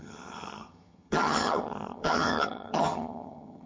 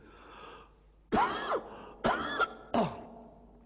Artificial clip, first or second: first